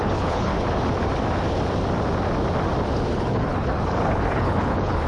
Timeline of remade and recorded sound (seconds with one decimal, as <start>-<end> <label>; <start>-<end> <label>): 0.0-0.5 remade; 0.5-3.1 recorded; 3.1-5.1 remade